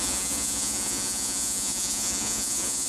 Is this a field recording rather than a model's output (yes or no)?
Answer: no